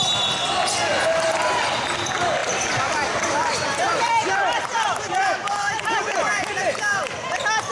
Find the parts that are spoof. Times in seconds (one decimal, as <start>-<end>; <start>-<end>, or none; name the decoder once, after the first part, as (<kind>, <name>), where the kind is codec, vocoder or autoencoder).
2.4-7.0 (vocoder, BigVGAN v2)